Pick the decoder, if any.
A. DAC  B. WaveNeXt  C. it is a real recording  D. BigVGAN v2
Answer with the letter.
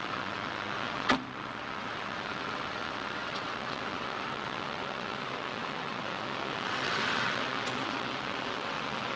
B